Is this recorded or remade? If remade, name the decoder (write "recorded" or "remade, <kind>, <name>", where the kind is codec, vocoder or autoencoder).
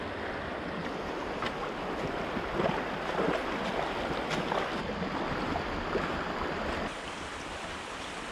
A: recorded